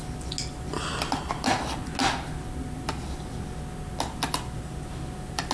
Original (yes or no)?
yes